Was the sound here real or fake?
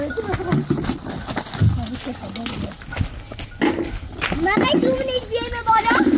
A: real